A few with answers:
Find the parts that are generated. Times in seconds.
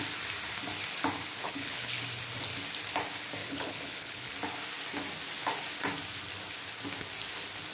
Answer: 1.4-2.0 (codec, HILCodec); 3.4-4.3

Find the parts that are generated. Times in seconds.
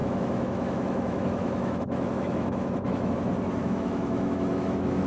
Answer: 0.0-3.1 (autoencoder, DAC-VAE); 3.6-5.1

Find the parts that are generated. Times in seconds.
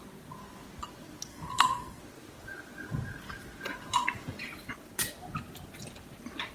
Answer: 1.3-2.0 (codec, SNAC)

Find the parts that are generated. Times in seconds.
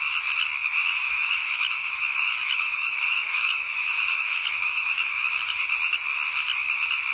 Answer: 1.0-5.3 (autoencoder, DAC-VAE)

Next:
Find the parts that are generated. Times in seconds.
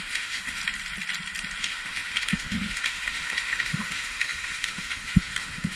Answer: 0.0-0.6 (autoencoder, DAC-VAE); 1.6-5.8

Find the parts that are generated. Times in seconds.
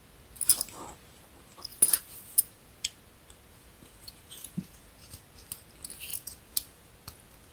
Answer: 1.7-3.0 (vocoder, Vocos); 3.5-5.2; 6.1-6.9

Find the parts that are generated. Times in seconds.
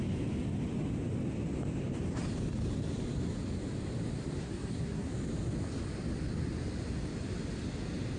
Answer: 4.4-5.1 (codec, SNAC)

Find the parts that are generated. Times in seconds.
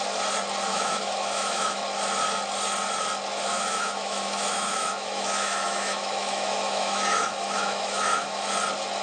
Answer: 0.7-1.8 (autoencoder, DAC-VAE); 3.3-8.5